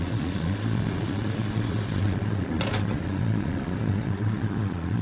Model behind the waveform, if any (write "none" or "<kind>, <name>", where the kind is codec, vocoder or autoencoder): vocoder, Vocos